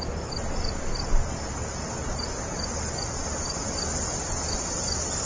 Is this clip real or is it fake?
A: real